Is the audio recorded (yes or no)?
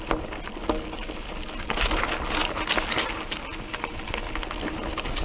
yes